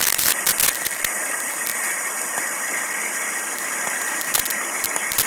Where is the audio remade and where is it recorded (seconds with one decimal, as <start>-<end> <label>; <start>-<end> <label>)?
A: 0.0-5.3 recorded